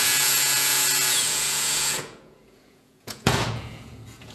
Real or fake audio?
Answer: fake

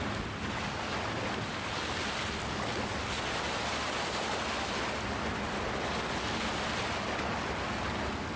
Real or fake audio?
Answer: real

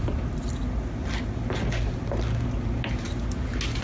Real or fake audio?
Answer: real